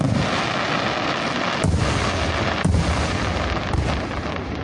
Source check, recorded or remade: recorded